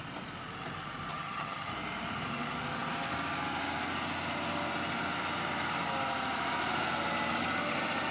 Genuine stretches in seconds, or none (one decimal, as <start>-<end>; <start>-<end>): 0.0-1.1; 1.7-8.1